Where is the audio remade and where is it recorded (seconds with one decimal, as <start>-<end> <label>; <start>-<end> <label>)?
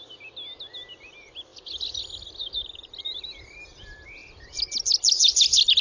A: 0.0-5.8 recorded